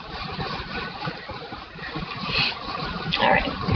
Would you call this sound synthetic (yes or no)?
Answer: no